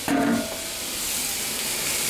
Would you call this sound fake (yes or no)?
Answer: no